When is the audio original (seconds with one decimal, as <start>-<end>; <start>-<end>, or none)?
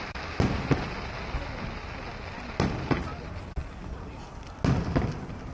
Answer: 0.0-5.5